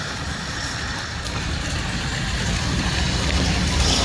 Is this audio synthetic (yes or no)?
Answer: no